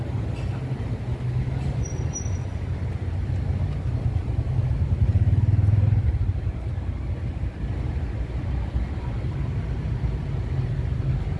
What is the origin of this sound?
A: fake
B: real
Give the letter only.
B